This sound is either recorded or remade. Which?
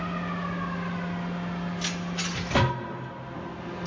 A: recorded